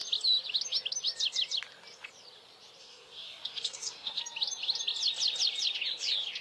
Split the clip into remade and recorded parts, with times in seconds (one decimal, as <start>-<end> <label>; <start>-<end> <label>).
0.0-2.8 recorded; 2.8-4.2 remade; 4.2-6.4 recorded